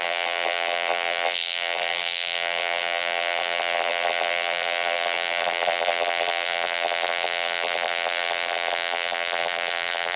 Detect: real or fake fake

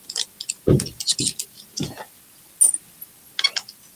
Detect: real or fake real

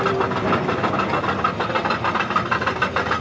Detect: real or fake real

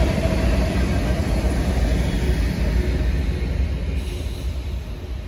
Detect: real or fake real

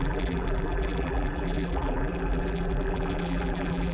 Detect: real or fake fake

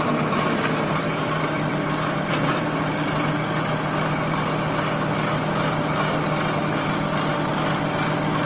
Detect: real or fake real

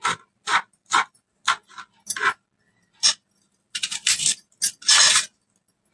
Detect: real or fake real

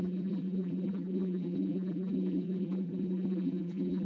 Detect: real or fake fake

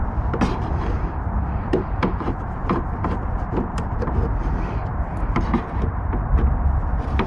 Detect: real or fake fake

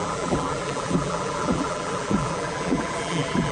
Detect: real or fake fake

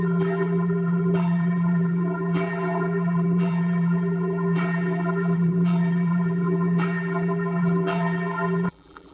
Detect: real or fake fake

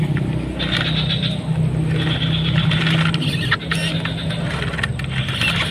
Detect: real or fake real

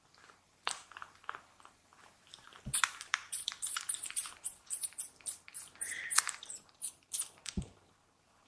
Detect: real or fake fake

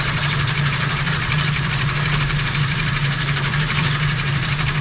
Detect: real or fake fake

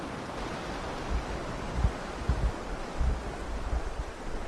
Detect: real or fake real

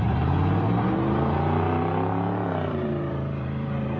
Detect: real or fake fake